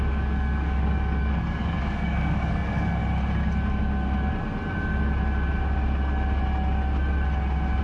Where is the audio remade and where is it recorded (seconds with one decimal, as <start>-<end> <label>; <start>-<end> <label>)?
0.0-3.0 remade; 3.0-7.8 recorded